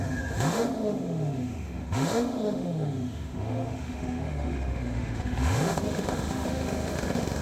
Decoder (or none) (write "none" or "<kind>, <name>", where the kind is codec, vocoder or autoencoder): autoencoder, DAC-VAE